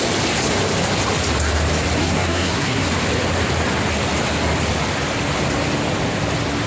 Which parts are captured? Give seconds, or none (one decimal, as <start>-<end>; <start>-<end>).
0.0-2.0; 2.9-6.7